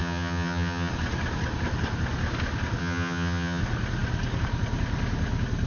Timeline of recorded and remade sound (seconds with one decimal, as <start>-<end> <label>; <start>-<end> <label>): 0.0-0.9 remade; 0.9-2.8 recorded; 2.8-3.6 remade; 3.6-5.7 recorded